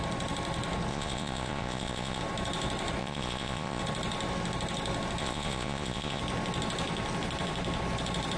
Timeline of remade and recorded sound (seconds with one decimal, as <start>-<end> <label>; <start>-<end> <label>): 0.0-0.9 recorded; 0.9-2.2 remade; 2.2-3.0 recorded; 3.0-3.8 remade; 3.8-5.2 recorded; 5.2-6.2 remade; 6.2-8.4 recorded

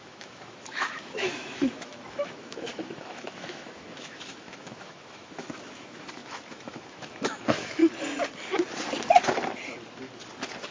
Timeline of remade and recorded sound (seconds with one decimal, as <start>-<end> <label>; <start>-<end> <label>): 0.0-7.8 remade; 7.8-10.7 recorded

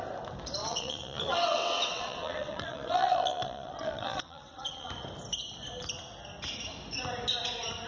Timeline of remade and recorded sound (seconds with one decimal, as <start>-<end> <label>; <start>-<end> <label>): 0.0-0.6 recorded; 0.6-4.9 remade; 4.9-7.9 recorded